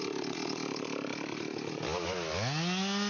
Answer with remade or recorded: recorded